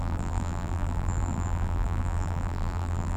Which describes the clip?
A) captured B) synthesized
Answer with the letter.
B